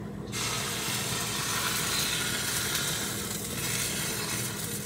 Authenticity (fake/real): real